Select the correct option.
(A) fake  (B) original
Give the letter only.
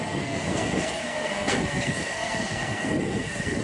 A